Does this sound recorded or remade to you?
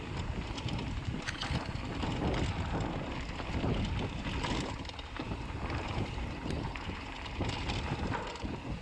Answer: recorded